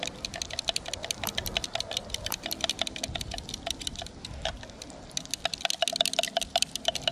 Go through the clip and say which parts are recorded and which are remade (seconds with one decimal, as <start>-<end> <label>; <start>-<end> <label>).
0.0-7.1 recorded